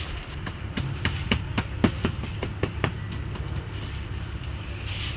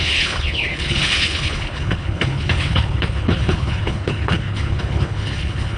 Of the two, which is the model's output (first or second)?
second